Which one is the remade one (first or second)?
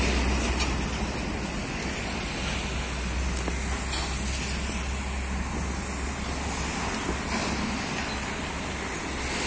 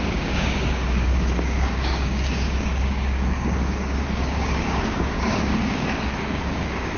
second